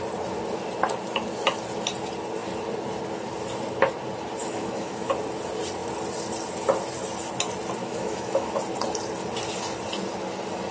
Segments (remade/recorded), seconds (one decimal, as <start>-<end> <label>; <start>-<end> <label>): 0.0-4.4 recorded; 4.4-5.1 remade; 5.1-7.8 recorded; 7.8-8.5 remade; 8.5-10.7 recorded